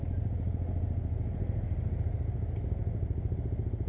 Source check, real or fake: real